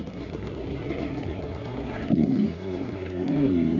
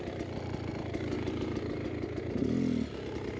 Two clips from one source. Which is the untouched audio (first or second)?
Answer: second